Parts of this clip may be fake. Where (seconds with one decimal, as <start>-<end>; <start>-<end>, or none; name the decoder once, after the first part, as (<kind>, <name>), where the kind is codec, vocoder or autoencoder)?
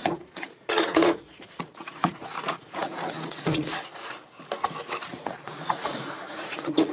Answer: 0.0-4.1 (vocoder, Vocos); 5.1-6.9